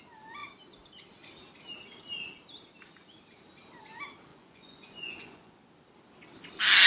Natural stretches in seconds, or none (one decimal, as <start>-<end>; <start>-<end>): 0.0-4.3; 5.6-6.9